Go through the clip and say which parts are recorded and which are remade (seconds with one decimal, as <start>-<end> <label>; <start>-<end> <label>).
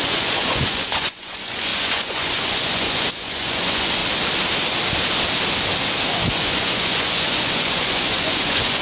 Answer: 0.0-4.0 remade; 4.0-6.1 recorded; 6.1-8.8 remade